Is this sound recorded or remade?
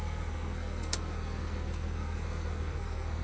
remade